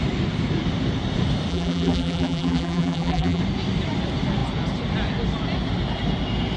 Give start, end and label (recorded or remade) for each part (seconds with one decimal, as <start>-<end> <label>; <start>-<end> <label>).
0.0-1.5 recorded; 1.5-3.4 remade; 3.4-6.6 recorded